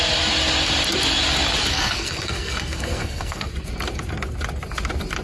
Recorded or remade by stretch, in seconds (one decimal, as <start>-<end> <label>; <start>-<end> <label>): 0.0-1.7 recorded; 1.7-3.5 remade; 3.5-5.2 recorded